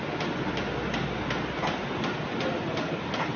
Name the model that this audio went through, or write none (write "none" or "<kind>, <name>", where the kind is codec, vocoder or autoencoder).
none